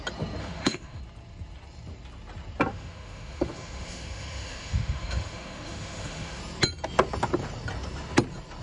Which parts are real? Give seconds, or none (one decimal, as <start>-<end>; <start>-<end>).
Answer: 0.0-0.4; 1.0-2.7; 6.4-8.6